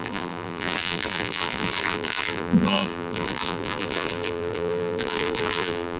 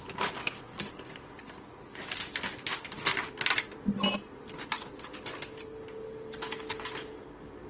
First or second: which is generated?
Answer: first